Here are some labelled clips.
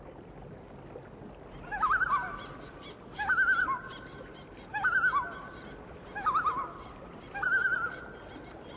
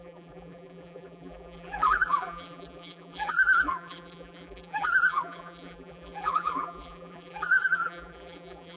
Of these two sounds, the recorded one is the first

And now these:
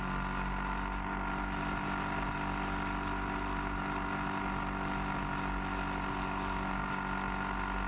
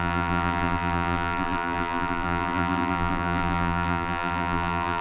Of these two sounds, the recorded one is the first